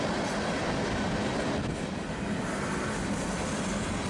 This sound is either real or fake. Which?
real